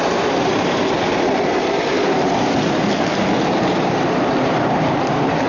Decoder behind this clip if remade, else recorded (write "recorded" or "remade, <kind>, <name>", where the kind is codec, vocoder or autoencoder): remade, vocoder, BigVGAN v2